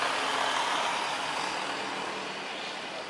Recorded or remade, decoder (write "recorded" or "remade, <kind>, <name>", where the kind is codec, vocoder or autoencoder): recorded